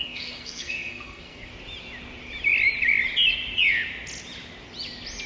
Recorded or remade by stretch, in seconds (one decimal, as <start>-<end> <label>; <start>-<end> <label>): 0.0-1.5 remade; 1.5-5.3 recorded